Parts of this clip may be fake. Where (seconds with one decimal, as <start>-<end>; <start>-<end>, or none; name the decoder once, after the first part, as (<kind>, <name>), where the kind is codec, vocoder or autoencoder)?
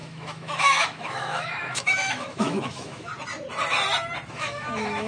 0.0-3.1 (autoencoder, DAC-VAE); 4.3-5.1